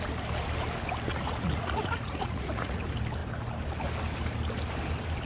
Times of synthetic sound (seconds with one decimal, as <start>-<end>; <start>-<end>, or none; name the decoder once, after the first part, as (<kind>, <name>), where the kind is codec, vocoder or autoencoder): 1.1-2.8 (vocoder, Vocos)